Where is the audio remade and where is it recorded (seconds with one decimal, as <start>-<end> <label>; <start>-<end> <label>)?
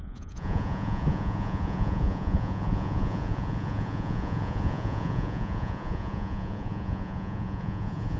0.0-8.2 remade